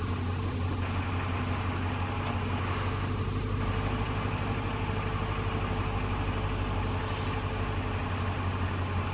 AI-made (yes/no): no